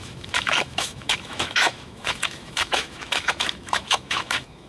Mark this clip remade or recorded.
remade